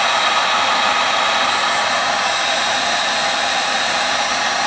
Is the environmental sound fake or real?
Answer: real